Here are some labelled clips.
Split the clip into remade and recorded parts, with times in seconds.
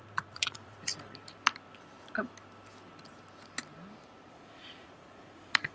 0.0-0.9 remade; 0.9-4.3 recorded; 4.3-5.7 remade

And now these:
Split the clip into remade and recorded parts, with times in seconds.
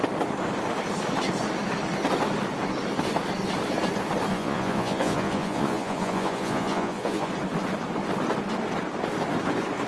0.0-4.3 recorded; 4.3-7.3 remade; 7.3-9.9 recorded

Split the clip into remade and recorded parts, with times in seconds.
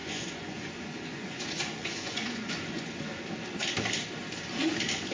0.0-3.1 remade; 3.1-5.1 recorded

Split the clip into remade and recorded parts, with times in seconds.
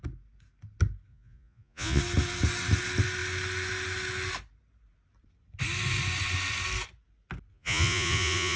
0.0-1.1 recorded; 1.1-2.0 remade; 2.0-7.5 recorded; 7.5-8.6 remade